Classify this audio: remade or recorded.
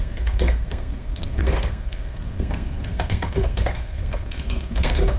remade